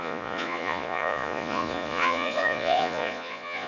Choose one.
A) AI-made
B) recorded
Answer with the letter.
A